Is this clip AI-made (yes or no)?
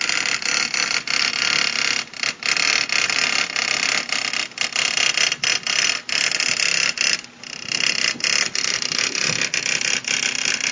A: no